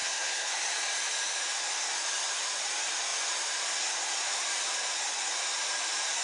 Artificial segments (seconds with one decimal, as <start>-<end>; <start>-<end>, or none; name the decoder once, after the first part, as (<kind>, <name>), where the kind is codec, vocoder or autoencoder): 0.0-0.5 (codec, SNAC)